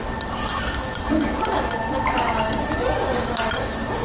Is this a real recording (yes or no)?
yes